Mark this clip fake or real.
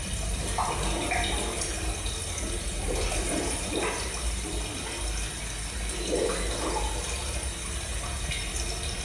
real